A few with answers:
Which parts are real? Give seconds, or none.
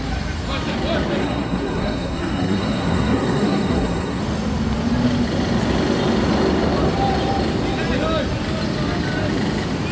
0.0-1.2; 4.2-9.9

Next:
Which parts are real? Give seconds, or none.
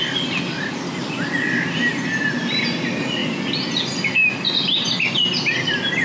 0.0-6.0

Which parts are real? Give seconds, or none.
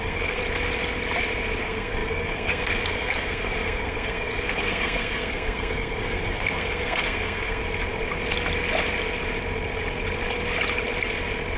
0.4-1.6; 7.6-11.6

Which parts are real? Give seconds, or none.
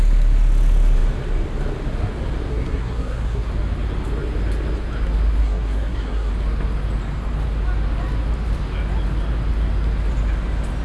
0.0-2.5; 3.5-5.4; 6.3-10.8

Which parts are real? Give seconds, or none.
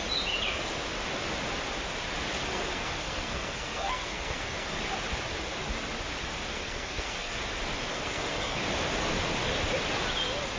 0.0-2.4; 4.8-6.5; 7.4-7.9; 8.6-10.6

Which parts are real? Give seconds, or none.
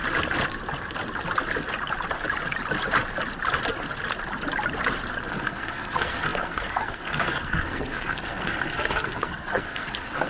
0.0-5.3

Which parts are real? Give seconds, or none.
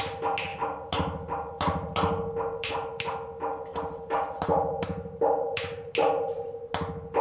0.0-7.2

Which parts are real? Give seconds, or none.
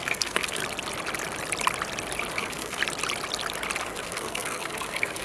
0.6-2.3; 2.8-3.8